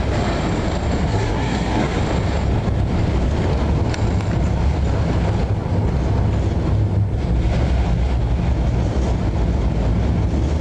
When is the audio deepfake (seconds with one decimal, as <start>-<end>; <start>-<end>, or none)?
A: 1.0-2.0